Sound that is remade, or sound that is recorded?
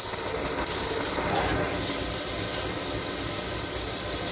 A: remade